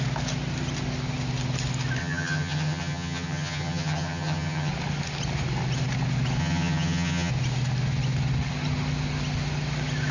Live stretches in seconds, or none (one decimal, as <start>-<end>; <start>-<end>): 0.0-2.0; 4.7-6.4; 7.3-10.1